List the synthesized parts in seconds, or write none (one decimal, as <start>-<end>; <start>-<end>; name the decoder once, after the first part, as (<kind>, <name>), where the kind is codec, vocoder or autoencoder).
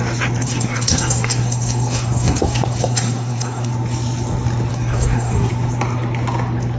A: 0.4-3.7 (codec, SNAC); 4.7-5.5